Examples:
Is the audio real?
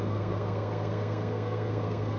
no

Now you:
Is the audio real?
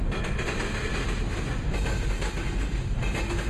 yes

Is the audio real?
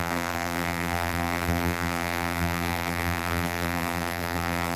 no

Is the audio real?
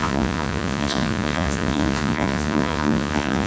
no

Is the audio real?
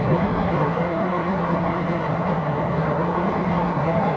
no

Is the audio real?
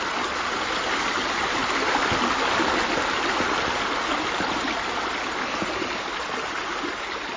yes